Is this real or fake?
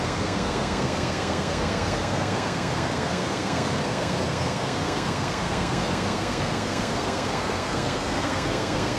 fake